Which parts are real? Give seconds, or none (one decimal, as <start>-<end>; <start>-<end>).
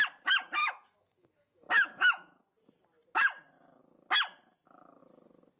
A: 0.0-0.6; 2.4-5.6